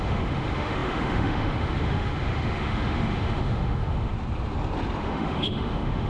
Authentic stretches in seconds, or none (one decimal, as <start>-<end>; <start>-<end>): 4.1-5.0